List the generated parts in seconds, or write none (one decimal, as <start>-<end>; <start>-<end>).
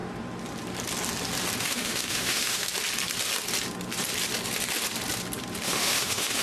1.6-2.7; 5.6-6.4